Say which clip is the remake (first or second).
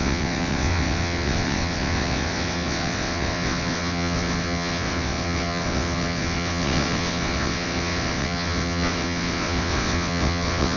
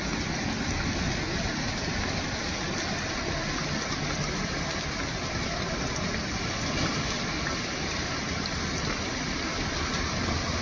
first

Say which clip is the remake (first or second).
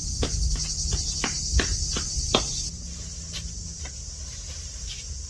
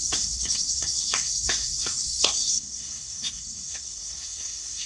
second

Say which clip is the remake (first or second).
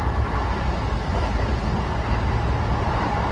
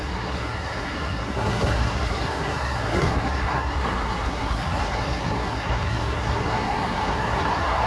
second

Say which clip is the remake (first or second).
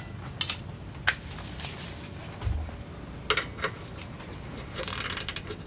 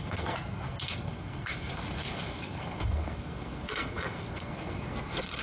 second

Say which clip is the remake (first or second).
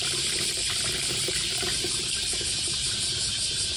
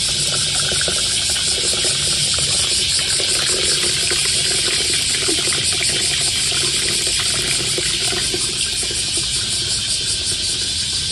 first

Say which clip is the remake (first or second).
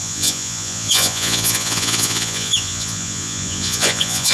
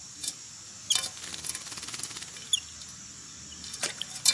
first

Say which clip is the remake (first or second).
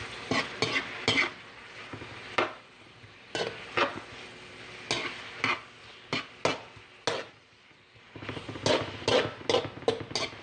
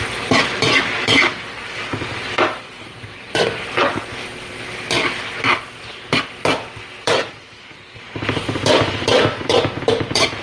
second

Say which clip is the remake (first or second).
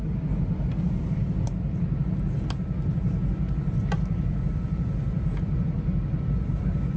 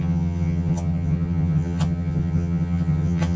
second